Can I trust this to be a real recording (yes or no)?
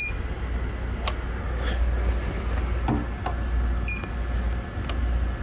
yes